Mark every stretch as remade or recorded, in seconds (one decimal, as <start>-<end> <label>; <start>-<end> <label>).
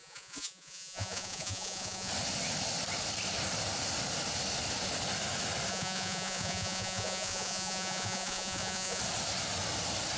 0.0-2.1 remade; 2.1-5.7 recorded; 5.7-9.0 remade; 9.0-10.2 recorded